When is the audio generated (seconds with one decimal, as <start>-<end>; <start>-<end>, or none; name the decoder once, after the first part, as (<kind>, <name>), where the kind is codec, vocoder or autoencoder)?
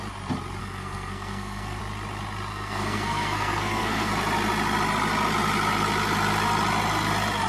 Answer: 0.6-1.8 (codec, SNAC); 2.5-4.1